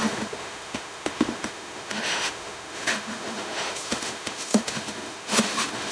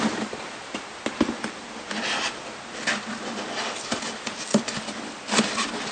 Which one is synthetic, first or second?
first